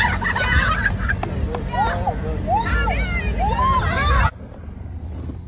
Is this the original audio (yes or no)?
yes